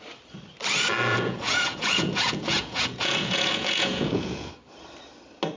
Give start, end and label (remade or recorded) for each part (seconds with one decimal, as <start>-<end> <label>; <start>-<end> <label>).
0.0-1.1 recorded; 1.1-4.5 remade; 4.5-5.6 recorded